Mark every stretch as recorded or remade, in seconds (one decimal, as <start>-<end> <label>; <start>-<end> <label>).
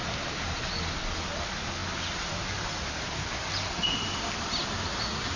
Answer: 0.0-5.4 recorded